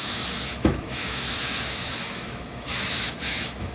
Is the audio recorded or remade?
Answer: remade